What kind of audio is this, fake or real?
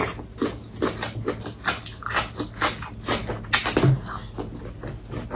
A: real